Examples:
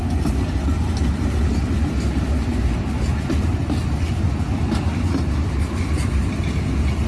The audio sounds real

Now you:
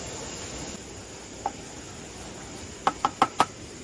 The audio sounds real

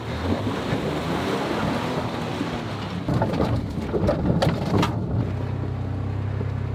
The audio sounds real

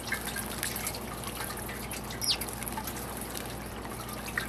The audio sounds real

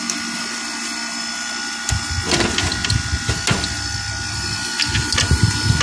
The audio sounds real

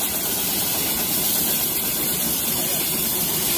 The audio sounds real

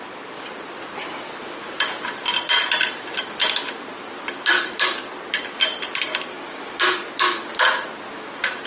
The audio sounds fake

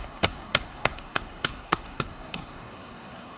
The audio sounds fake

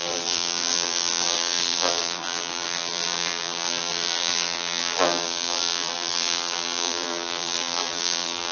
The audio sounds fake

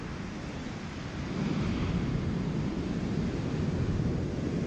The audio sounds real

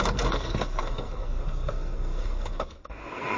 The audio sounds fake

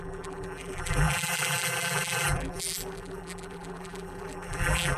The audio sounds fake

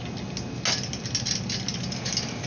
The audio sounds real